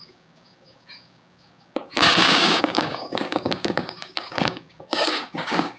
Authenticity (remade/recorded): remade